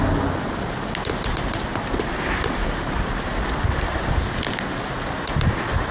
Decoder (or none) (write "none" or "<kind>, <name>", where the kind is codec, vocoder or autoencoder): none